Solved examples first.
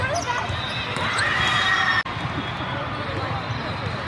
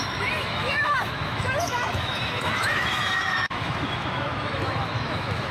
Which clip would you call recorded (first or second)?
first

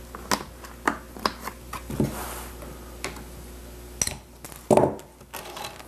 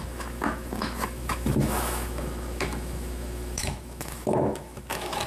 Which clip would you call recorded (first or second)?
first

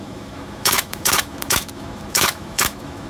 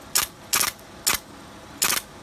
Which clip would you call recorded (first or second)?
second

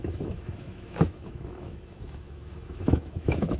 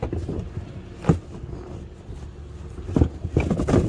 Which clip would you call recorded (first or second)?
second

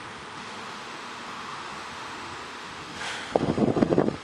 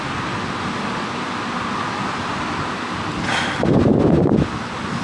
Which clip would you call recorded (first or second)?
second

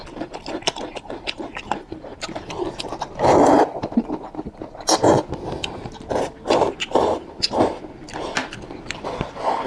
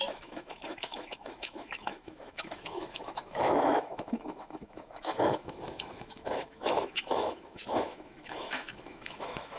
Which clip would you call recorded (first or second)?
first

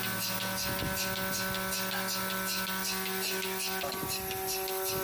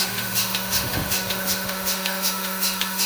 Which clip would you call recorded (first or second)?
first